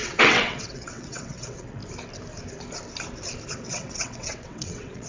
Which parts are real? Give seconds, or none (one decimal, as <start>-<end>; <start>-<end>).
1.8-3.5